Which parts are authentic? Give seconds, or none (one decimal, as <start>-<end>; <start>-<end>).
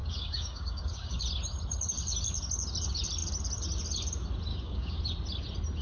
1.2-4.5; 5.0-5.8